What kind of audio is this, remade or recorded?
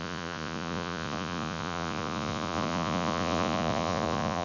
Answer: remade